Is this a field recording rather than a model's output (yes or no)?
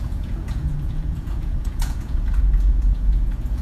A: no